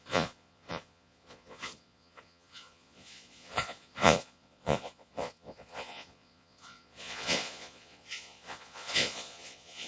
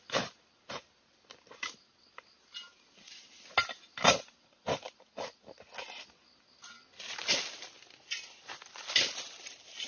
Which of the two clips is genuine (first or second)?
second